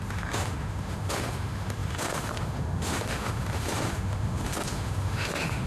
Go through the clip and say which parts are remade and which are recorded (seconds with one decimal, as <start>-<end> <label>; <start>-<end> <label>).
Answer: 0.0-5.7 remade